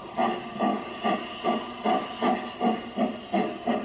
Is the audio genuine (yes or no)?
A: yes